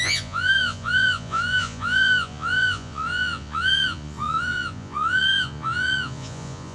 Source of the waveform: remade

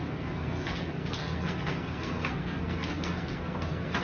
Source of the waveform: remade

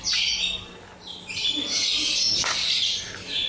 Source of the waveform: recorded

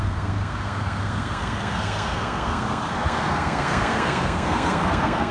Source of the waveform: remade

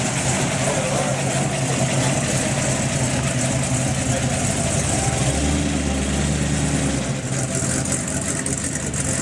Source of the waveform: recorded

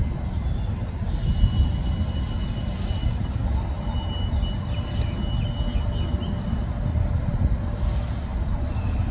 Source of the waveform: recorded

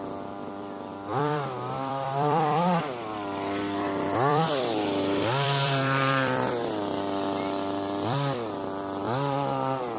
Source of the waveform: remade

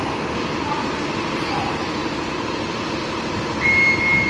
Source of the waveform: recorded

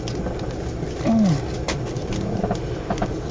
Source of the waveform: recorded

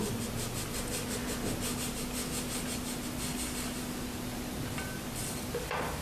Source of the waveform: recorded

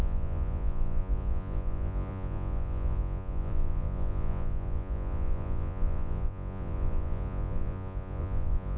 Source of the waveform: remade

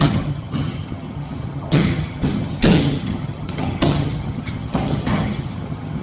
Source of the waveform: remade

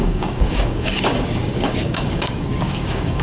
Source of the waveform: remade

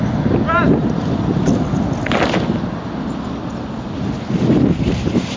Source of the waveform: recorded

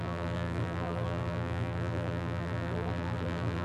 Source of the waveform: remade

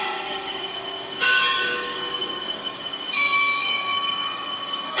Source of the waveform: remade